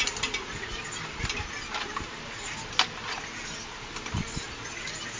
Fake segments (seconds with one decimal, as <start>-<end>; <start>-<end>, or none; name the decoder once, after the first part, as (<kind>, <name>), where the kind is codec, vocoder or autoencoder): none